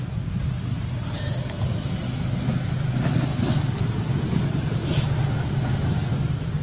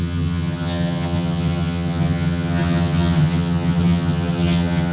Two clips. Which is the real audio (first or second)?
first